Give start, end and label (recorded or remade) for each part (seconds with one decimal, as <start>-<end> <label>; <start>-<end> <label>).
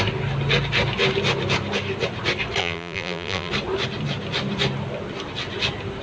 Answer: 0.0-2.6 recorded; 2.6-3.5 remade; 3.5-6.0 recorded